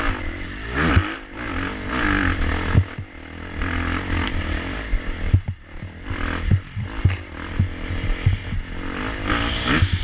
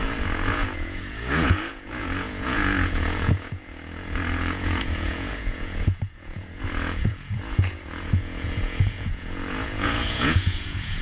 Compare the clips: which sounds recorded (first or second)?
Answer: first